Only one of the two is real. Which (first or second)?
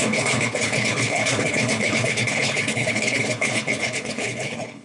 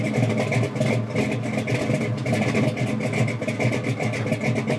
second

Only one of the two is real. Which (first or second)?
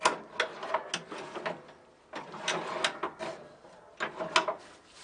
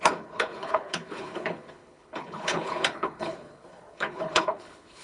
first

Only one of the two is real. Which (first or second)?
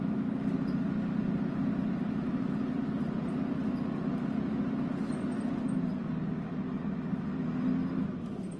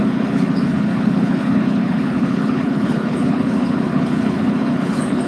first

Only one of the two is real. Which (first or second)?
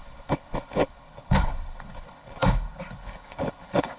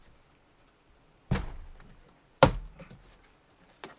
second